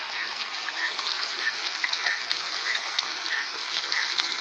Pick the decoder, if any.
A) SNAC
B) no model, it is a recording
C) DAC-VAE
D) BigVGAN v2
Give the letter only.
A